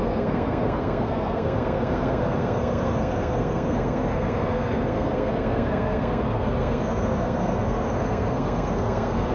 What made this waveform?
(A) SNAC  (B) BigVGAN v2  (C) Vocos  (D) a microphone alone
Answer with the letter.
A